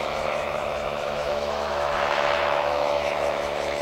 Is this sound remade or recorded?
remade